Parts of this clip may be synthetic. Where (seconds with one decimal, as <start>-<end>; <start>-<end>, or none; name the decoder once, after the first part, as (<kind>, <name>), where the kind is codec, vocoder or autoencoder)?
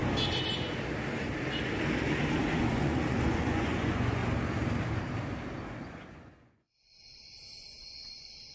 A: 2.4-4.2 (vocoder, Vocos); 5.8-8.5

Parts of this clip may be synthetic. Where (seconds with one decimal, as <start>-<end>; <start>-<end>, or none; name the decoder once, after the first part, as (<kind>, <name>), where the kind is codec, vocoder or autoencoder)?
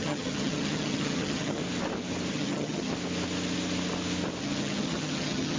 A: 0.0-1.6 (vocoder, HiFi-GAN); 2.3-2.9; 4.4-5.6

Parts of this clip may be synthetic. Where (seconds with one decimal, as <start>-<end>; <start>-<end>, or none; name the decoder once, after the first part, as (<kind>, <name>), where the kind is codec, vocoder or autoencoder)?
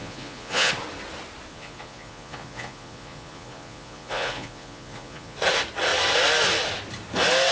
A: 0.0-0.7 (vocoder, Vocos); 1.5-5.4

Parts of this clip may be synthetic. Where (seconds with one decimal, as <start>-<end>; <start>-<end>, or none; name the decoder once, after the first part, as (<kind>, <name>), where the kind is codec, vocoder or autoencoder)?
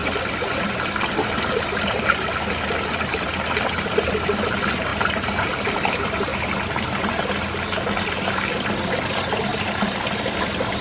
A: 3.2-6.3 (vocoder, BigVGAN v2); 7.6-9.5; 10.2-10.8